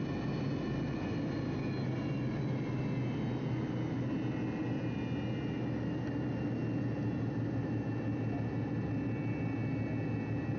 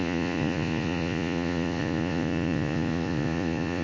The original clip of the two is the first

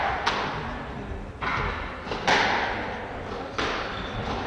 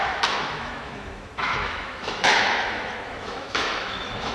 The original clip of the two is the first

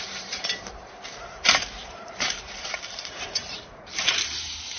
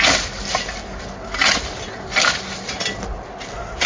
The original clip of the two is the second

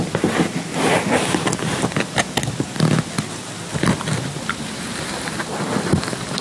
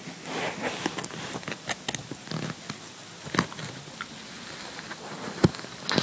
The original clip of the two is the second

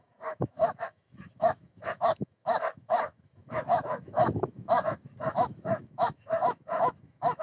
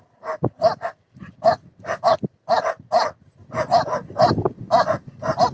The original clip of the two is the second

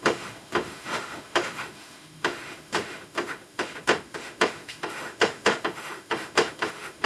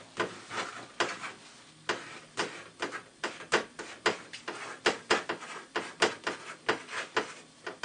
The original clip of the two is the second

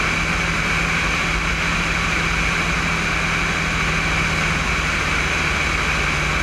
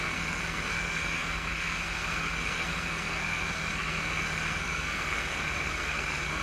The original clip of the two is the first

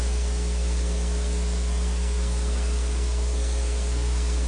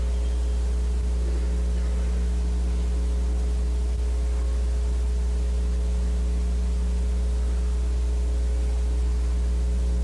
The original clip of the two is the second